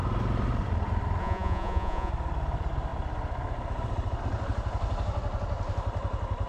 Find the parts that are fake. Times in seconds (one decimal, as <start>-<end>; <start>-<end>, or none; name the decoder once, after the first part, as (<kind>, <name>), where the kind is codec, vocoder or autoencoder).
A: 1.2-2.1 (vocoder, Vocos)